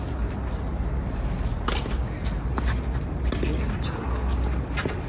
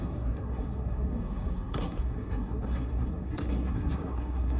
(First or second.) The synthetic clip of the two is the second